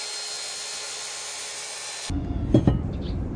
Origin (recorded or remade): recorded